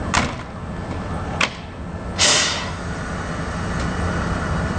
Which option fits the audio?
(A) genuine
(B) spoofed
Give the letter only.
A